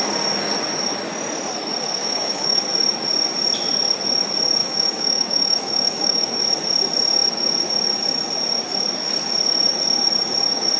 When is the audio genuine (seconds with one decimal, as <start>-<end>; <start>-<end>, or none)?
0.0-2.0; 2.6-4.6; 6.4-10.8